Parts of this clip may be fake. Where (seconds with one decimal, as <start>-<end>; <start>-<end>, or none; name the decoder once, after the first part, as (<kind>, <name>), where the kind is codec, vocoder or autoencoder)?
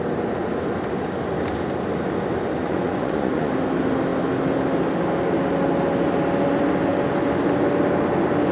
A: 2.6-3.5 (vocoder, Vocos)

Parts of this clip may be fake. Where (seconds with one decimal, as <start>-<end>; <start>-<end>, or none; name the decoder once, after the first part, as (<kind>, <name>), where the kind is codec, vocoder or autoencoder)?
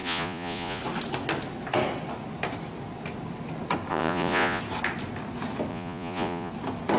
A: 0.0-0.8 (vocoder, Vocos); 3.9-4.6; 5.7-6.5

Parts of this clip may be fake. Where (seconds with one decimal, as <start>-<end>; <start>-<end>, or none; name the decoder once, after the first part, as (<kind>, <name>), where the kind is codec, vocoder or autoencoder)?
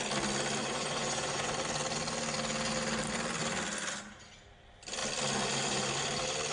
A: 0.6-1.5 (vocoder, Vocos)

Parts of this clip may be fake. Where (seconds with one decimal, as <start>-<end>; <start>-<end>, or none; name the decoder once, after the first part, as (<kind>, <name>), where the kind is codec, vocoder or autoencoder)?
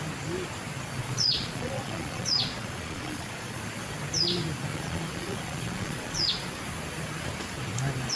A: 1.0-3.6 (vocoder, Vocos); 4.7-6.6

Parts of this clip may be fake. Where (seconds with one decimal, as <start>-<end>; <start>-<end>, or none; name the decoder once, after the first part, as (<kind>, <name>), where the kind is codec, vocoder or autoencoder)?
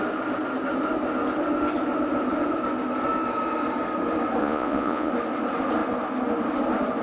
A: 4.4-5.1 (vocoder, Vocos)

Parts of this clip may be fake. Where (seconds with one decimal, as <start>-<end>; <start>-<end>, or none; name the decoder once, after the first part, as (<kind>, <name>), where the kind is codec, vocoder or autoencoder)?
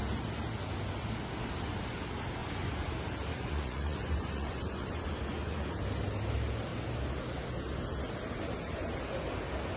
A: 2.4-2.9 (vocoder, Vocos); 3.3-5.7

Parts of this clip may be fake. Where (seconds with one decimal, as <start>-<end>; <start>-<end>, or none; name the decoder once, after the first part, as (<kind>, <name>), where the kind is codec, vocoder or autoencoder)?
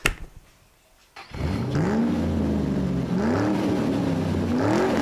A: none